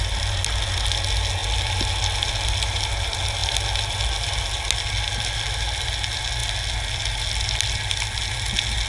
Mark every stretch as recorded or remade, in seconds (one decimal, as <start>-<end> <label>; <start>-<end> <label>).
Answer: 0.0-8.9 recorded